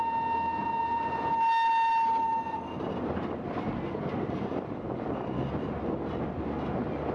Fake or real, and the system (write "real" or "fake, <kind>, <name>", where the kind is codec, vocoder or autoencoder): real